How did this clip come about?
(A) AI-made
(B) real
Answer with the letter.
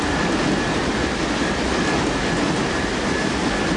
B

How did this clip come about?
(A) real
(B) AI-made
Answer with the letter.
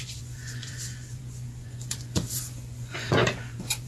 B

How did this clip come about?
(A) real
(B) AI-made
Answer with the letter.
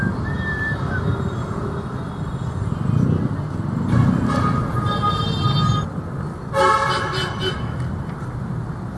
A